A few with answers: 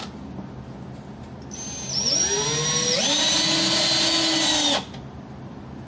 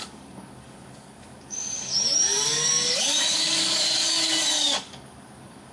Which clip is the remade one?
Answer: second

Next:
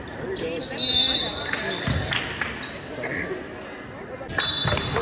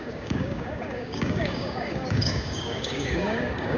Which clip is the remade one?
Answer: second